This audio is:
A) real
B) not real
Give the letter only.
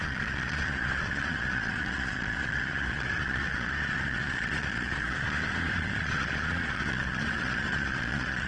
B